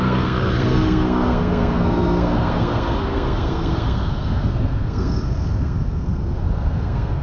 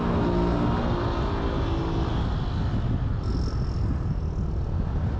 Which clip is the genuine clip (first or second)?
second